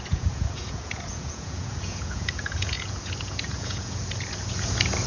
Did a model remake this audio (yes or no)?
yes